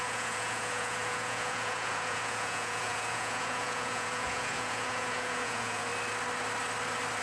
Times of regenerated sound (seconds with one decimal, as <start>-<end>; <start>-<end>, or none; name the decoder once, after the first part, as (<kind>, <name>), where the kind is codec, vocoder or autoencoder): 0.0-5.9 (vocoder, Vocos)